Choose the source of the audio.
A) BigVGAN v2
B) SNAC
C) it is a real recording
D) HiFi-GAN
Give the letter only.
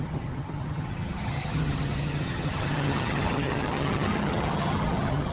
D